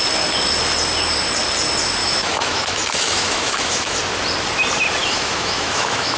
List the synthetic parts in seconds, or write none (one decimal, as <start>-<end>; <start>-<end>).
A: 2.0-4.0; 5.0-6.2